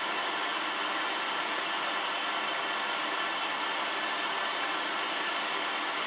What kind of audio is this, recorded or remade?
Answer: recorded